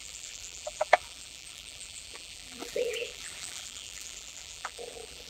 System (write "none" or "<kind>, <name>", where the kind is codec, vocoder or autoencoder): vocoder, BigVGAN v2